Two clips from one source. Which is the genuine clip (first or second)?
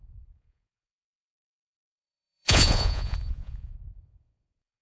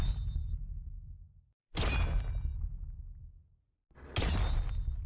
second